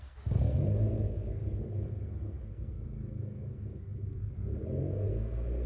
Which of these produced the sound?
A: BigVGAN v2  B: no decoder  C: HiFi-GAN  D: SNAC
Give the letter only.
D